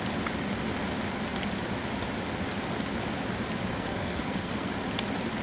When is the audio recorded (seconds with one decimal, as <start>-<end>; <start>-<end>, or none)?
0.0-3.7; 4.7-5.4